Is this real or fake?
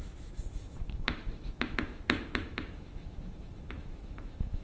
fake